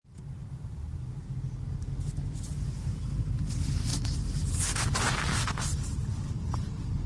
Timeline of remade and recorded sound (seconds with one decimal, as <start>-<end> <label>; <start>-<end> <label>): 0.0-7.1 recorded